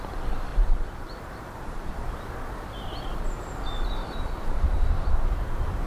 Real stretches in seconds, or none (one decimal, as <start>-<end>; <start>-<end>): 0.0-0.5; 1.9-4.0